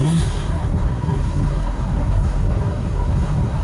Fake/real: fake